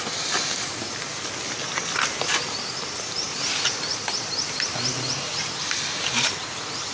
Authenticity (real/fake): real